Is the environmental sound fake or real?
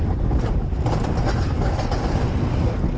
real